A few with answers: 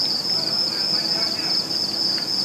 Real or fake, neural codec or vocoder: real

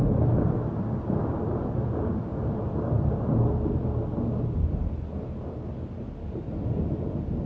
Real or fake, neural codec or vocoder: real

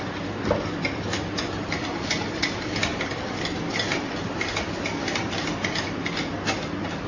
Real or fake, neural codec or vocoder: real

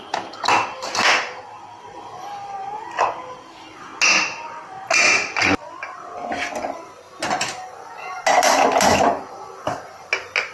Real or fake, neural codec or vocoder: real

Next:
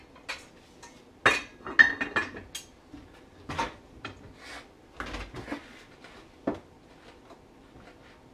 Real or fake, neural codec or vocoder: real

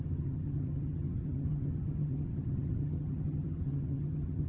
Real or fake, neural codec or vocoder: fake, vocoder, HiFi-GAN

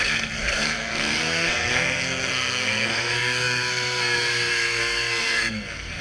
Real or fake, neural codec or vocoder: fake, codec, SNAC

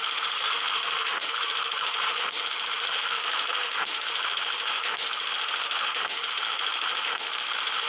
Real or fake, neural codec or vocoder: fake, autoencoder, DAC-VAE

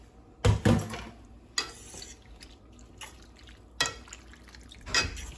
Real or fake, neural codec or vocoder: real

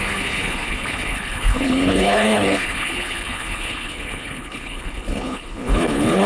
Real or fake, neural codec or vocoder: fake, codec, HILCodec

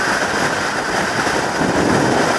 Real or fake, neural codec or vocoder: fake, vocoder, BigVGAN v2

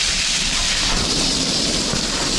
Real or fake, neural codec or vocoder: fake, vocoder, BigVGAN v2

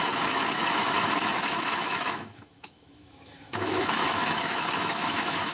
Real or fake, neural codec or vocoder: fake, autoencoder, DAC-VAE